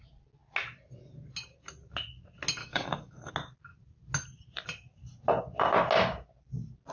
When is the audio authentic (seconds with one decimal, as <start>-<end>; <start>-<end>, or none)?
0.0-2.6; 3.3-6.9